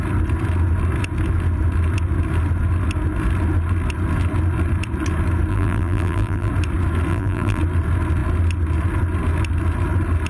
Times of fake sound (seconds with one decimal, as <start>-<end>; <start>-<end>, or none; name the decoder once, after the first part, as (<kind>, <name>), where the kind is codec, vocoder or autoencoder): 5.5-6.5 (vocoder, BigVGAN v2); 7.1-7.6